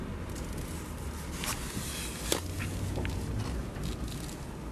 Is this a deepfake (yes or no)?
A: no